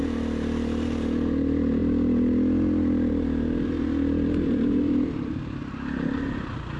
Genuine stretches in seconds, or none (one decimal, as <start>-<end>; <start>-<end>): 0.0-6.8